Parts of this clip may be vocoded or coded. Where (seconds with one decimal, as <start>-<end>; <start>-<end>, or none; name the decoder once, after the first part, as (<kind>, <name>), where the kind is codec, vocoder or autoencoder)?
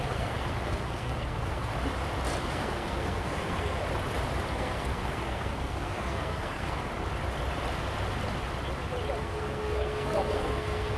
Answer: 0.0-1.7 (codec, SNAC); 2.4-3.8; 4.5-6.9; 9.2-11.0